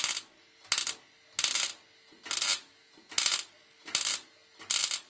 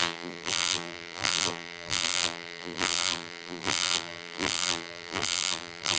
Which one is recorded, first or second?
first